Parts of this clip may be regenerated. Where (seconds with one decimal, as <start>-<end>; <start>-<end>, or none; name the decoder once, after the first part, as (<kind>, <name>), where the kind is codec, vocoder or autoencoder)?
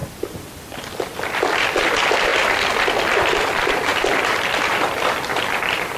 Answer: 0.9-2.3 (vocoder, BigVGAN v2); 3.2-6.0